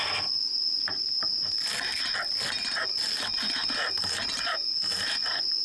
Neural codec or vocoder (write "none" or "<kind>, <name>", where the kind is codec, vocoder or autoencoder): none